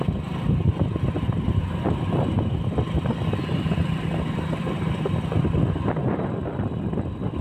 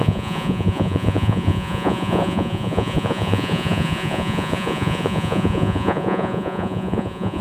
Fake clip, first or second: second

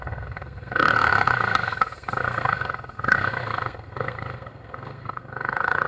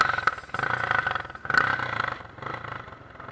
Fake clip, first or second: first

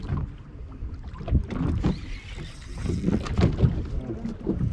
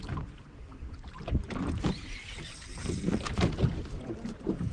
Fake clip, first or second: second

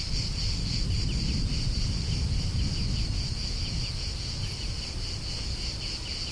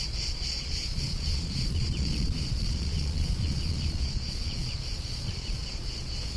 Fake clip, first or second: second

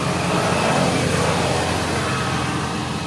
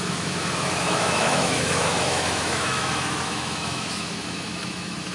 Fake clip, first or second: second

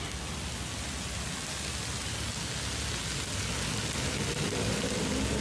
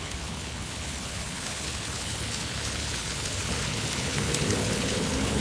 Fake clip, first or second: second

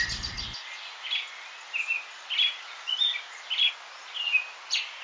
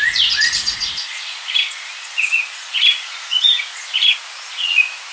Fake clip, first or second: second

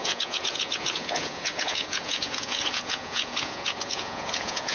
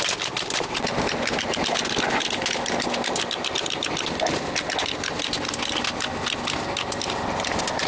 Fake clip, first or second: first